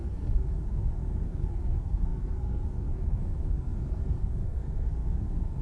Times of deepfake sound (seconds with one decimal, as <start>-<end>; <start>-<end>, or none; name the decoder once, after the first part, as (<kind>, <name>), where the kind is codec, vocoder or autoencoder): 0.0-5.6 (codec, SNAC)